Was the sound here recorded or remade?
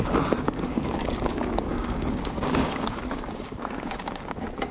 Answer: remade